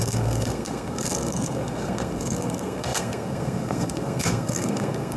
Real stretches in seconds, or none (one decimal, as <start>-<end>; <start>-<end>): none

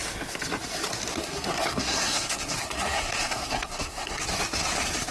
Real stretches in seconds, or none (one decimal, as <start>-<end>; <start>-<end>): 0.0-1.1; 4.2-5.1

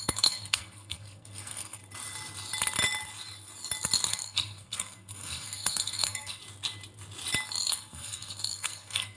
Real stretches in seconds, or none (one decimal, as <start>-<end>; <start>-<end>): 1.8-4.1; 6.4-7.7